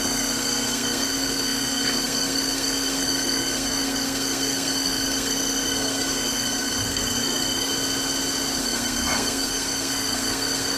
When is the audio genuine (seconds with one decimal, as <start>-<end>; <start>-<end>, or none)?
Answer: 7.7-8.6